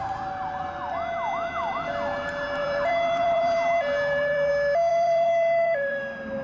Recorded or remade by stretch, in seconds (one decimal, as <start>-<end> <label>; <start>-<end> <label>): 0.0-2.6 recorded; 2.6-4.5 remade; 4.5-4.9 recorded; 4.9-6.0 remade; 6.0-6.4 recorded